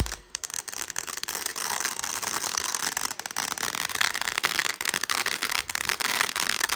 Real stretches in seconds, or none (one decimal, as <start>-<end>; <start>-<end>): 2.8-3.9